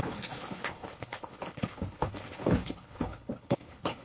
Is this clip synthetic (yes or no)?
yes